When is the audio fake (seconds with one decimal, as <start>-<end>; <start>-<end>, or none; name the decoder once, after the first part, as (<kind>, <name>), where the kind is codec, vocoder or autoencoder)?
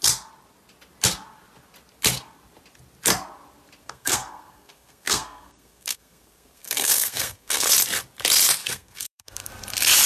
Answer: 3.8-7.7 (codec, SNAC); 8.6-9.5